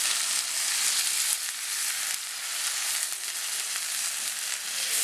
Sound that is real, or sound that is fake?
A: real